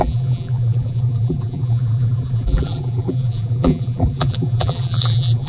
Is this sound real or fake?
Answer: fake